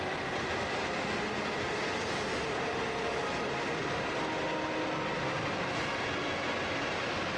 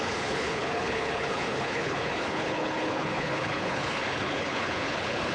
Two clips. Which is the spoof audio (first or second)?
second